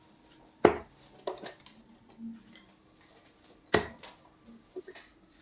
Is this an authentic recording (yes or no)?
yes